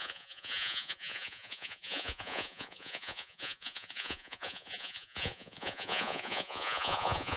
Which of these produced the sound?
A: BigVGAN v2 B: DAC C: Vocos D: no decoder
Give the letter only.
C